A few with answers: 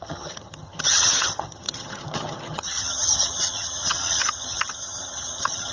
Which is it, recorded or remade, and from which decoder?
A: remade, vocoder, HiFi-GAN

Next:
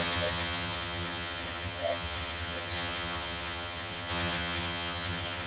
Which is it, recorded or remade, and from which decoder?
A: remade, vocoder, HiFi-GAN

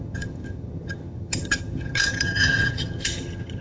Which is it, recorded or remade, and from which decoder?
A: remade, vocoder, HiFi-GAN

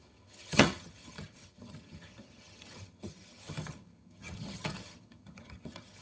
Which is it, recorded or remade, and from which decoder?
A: remade, vocoder, HiFi-GAN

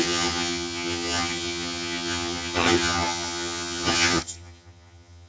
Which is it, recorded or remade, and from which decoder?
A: remade, vocoder, HiFi-GAN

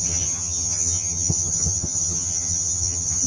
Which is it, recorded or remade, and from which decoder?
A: remade, vocoder, HiFi-GAN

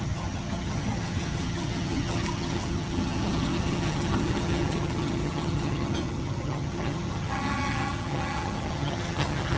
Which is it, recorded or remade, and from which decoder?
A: remade, vocoder, HiFi-GAN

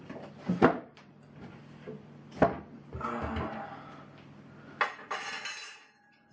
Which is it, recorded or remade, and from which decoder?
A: recorded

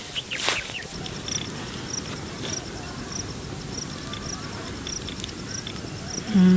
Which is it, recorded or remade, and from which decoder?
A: recorded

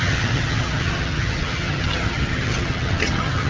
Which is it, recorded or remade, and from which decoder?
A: remade, vocoder, HiFi-GAN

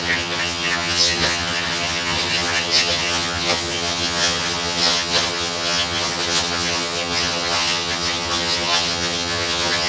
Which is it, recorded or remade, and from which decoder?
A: remade, vocoder, HiFi-GAN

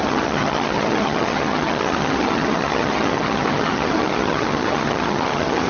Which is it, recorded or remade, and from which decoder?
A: remade, vocoder, HiFi-GAN